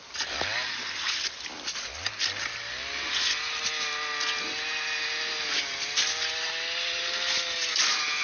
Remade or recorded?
recorded